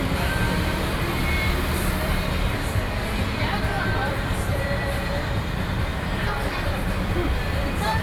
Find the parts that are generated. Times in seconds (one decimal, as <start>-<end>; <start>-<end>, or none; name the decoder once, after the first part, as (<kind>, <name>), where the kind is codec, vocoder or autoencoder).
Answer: 1.1-8.0 (vocoder, BigVGAN v2)